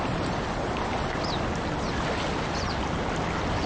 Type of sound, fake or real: real